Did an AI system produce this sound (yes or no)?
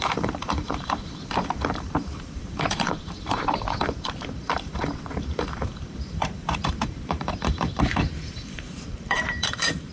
yes